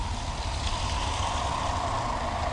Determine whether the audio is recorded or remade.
recorded